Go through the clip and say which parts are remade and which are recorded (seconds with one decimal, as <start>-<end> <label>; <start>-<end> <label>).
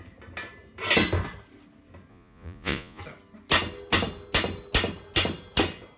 0.0-2.1 recorded; 2.1-3.0 remade; 3.0-6.0 recorded